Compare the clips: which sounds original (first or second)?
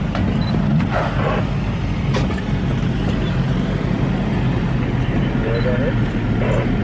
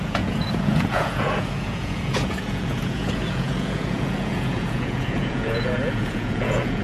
first